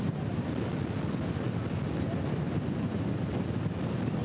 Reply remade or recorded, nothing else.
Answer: recorded